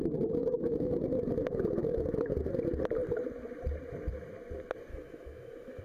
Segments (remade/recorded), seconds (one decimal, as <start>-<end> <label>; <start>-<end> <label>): 0.0-0.4 recorded; 0.4-2.5 remade; 2.5-4.9 recorded; 4.9-5.8 remade